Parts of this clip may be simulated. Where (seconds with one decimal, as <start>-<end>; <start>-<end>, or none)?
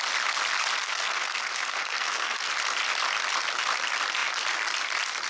0.8-2.5